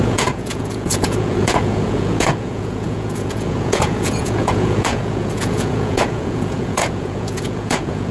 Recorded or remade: remade